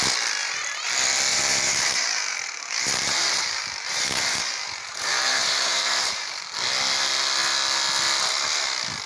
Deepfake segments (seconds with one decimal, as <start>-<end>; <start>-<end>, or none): 0.4-0.9; 1.3-6.4